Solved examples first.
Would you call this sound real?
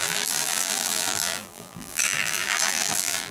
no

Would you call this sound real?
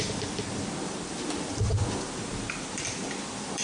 no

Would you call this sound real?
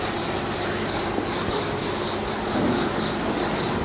yes